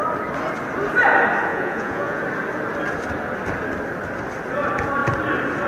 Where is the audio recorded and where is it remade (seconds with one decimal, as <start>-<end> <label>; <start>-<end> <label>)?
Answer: 0.0-1.5 recorded; 1.5-2.2 remade; 2.2-5.7 recorded